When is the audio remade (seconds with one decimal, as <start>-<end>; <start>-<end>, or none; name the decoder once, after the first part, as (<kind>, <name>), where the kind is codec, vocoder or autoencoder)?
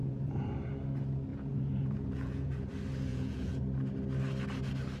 0.0-0.5 (vocoder, Vocos); 1.3-2.6; 3.1-3.6